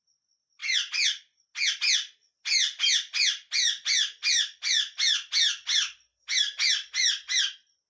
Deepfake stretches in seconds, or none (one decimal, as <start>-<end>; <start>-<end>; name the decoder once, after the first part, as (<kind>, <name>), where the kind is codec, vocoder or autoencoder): none